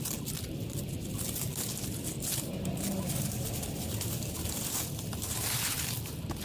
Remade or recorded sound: recorded